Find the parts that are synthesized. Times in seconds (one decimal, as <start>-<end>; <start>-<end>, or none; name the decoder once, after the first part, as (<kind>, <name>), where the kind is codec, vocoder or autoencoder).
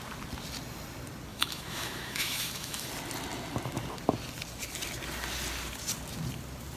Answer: 1.3-2.9 (autoencoder, DAC-VAE)